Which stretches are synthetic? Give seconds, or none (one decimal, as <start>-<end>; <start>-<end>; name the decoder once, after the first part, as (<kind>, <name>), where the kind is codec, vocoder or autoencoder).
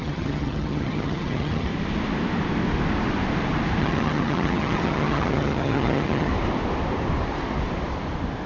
0.0-1.7 (vocoder, HiFi-GAN); 3.8-6.3